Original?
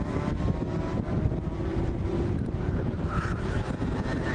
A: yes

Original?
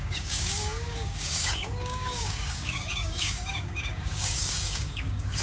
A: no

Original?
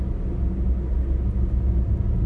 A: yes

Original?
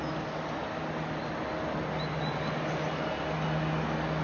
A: yes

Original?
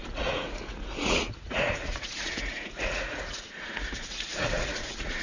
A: no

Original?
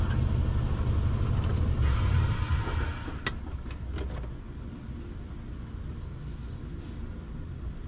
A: yes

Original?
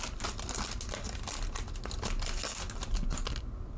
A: yes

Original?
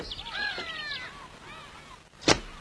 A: yes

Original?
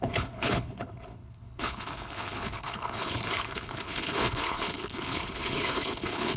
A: no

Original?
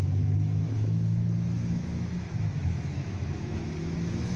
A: no